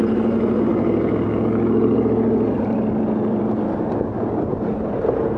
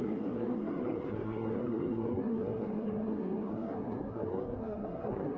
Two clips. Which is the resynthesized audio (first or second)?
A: second